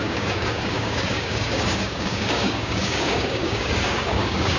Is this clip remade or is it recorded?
remade